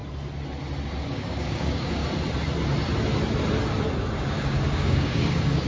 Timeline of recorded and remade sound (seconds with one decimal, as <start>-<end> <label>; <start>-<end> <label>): 0.0-1.0 recorded; 1.0-2.0 remade; 2.0-4.2 recorded; 4.2-5.7 remade